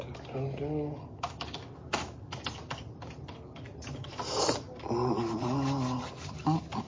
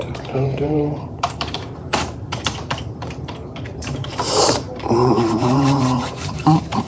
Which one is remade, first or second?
second